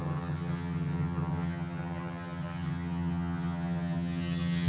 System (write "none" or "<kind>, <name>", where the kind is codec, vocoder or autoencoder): vocoder, HiFi-GAN